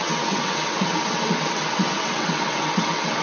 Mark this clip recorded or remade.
remade